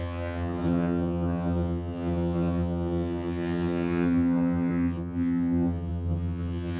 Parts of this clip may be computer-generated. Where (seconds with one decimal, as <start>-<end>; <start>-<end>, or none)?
0.0-6.8